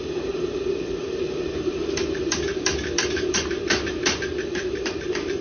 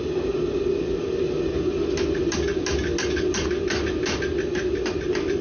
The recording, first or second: second